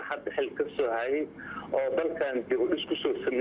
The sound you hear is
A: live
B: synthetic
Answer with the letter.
A